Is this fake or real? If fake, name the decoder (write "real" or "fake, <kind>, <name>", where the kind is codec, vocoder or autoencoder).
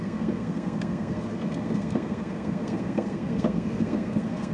fake, codec, SNAC